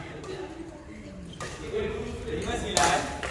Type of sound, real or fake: real